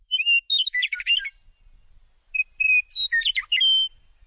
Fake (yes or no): no